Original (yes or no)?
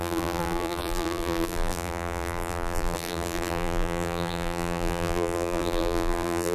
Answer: no